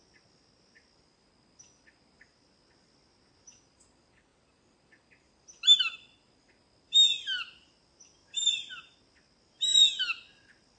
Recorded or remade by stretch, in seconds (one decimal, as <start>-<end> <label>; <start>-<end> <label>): 0.0-10.8 recorded